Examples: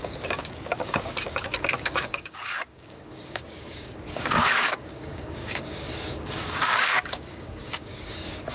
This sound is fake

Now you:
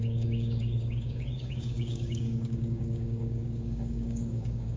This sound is fake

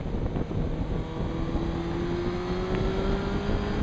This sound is real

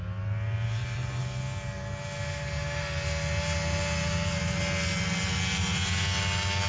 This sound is real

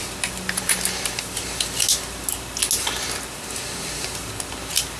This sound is real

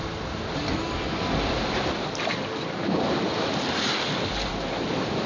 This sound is real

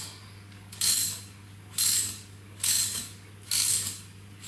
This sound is fake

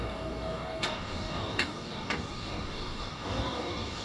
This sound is fake